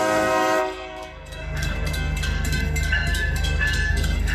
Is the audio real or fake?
fake